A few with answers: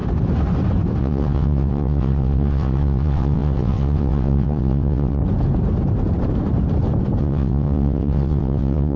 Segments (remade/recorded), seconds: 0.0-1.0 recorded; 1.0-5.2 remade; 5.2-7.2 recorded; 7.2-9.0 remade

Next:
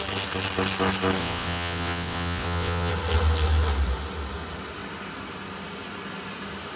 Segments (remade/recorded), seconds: 0.0-1.2 recorded; 1.2-2.9 remade; 2.9-6.8 recorded

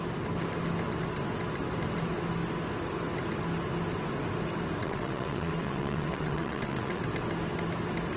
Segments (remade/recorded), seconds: 0.0-4.8 recorded; 4.8-7.0 remade; 7.0-8.2 recorded

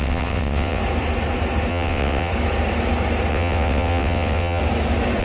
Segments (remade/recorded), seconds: 0.0-0.8 remade; 0.8-1.7 recorded; 1.7-2.3 remade; 2.3-3.3 recorded; 3.3-4.6 remade; 4.6-5.2 recorded

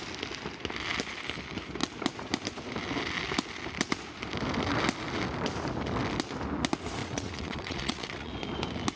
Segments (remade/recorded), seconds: 0.0-7.0 recorded; 7.0-8.3 remade; 8.3-9.0 recorded